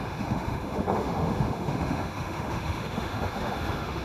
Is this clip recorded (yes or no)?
no